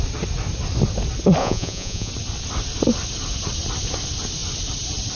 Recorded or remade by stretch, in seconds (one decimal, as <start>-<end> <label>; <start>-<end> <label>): 0.0-1.4 recorded; 1.4-2.1 remade; 2.1-5.1 recorded